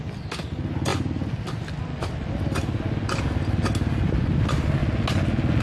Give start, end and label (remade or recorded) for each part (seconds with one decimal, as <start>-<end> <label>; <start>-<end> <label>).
0.0-5.6 recorded